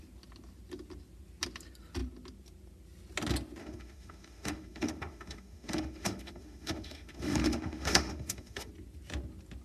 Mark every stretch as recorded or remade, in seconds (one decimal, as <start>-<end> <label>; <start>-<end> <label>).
0.0-3.6 recorded; 3.6-8.7 remade; 8.7-9.6 recorded